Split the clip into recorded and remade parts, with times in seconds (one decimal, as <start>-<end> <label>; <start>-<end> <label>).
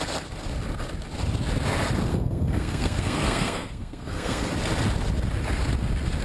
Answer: 0.0-2.1 recorded; 2.1-4.5 remade; 4.5-6.2 recorded